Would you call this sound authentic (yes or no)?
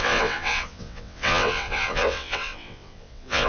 no